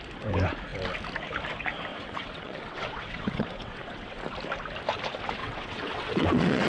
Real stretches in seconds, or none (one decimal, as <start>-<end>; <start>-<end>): 0.0-1.9; 4.2-5.4